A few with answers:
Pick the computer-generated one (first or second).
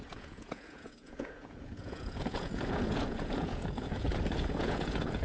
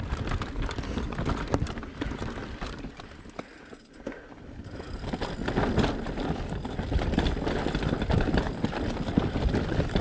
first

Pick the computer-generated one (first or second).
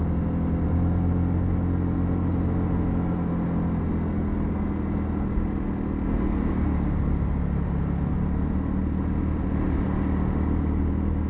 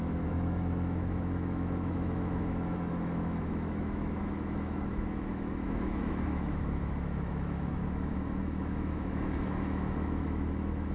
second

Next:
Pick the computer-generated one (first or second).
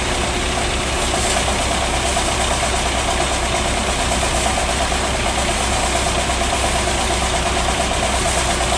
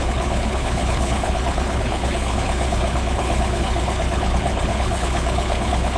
second